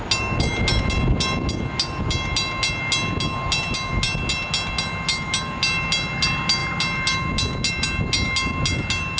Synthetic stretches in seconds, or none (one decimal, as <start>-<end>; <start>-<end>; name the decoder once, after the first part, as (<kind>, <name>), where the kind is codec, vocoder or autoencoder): none